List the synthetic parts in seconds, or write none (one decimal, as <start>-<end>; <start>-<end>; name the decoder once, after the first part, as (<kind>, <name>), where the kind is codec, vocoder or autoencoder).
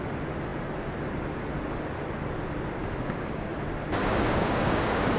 2.8-3.5 (codec, DAC); 4.0-5.2